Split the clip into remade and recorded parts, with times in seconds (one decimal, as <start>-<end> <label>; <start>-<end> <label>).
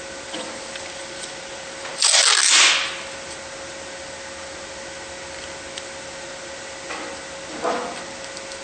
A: 0.0-8.6 recorded